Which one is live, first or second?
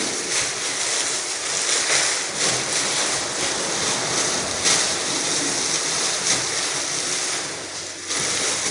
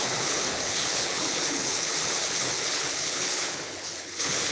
first